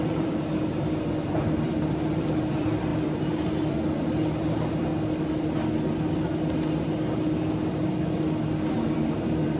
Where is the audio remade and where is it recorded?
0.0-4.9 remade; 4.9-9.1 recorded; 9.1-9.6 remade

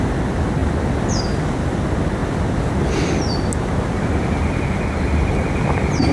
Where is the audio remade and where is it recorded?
0.0-6.1 recorded